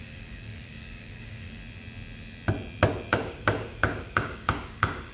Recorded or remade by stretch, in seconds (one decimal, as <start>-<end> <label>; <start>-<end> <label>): 0.0-1.6 remade; 1.6-3.1 recorded; 3.1-5.1 remade